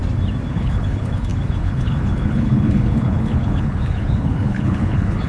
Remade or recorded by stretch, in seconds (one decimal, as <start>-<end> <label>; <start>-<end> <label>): 0.0-0.5 recorded; 0.5-5.3 remade